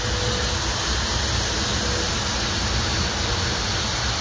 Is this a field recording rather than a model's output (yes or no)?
yes